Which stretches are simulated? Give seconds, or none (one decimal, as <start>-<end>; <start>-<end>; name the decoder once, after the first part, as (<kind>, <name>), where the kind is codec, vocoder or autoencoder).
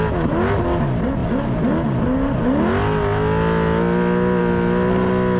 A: none